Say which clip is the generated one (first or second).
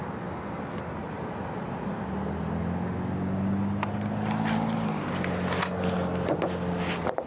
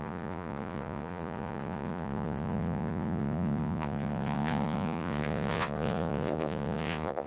second